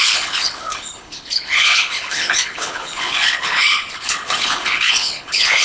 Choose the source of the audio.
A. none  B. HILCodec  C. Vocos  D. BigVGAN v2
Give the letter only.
B